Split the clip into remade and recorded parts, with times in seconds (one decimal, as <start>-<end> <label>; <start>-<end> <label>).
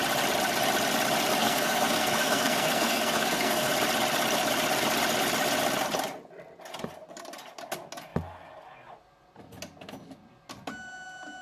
0.0-1.4 recorded; 1.4-3.7 remade; 3.7-11.4 recorded